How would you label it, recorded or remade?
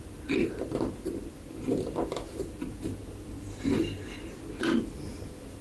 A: recorded